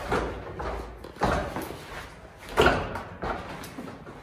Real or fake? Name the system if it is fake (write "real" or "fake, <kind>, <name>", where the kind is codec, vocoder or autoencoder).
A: real